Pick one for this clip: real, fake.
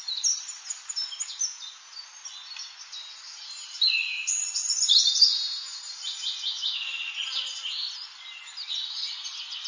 real